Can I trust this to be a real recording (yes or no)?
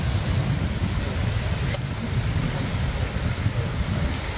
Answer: yes